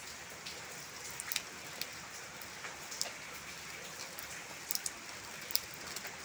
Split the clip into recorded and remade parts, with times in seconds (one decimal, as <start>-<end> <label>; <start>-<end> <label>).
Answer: 0.0-6.2 recorded